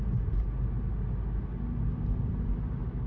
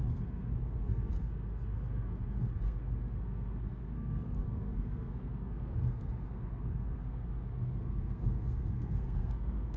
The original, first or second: first